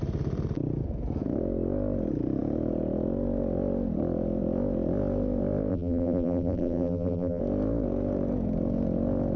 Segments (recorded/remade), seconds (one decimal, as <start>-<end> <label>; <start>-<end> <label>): 0.0-5.7 recorded; 5.7-7.4 remade; 7.4-9.4 recorded